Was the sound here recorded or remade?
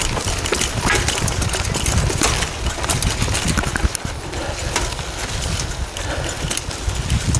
recorded